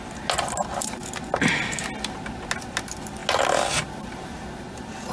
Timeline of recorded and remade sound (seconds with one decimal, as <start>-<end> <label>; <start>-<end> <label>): 0.0-5.1 recorded